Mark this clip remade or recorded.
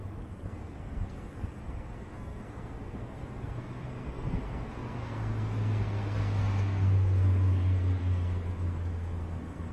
remade